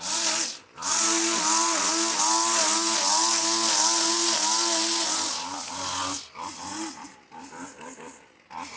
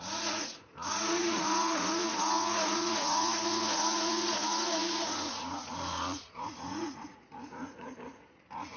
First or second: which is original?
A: first